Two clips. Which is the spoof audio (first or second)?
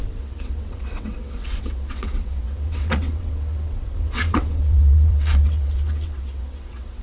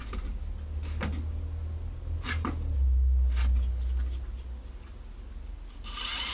first